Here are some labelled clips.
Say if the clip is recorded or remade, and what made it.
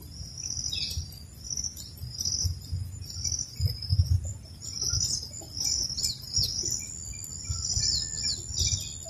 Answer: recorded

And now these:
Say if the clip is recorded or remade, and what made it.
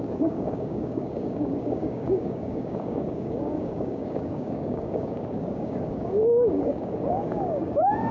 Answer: remade, codec, DAC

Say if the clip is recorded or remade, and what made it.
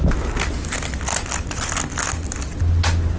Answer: recorded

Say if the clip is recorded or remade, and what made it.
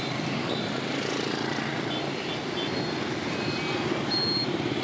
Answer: recorded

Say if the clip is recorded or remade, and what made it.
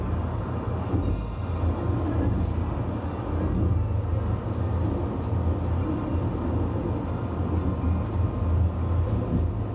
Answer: recorded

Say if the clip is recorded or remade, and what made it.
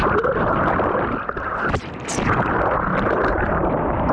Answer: recorded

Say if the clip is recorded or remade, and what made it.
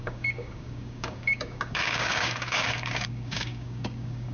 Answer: remade, codec, DAC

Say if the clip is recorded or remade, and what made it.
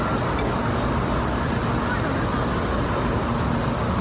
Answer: recorded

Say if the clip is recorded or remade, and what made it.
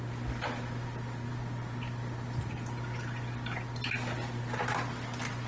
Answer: recorded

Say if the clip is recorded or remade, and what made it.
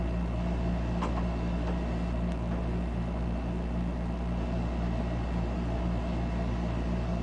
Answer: recorded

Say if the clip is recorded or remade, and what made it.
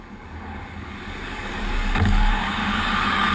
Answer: remade, codec, DAC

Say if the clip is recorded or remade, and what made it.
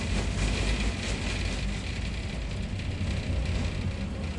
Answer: recorded